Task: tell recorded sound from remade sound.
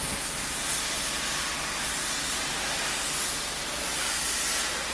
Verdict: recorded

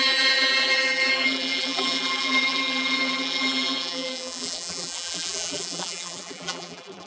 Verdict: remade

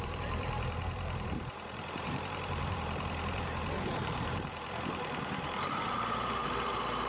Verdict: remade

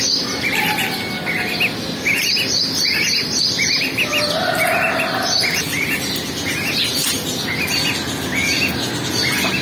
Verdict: recorded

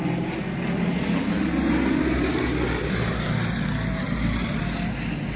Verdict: recorded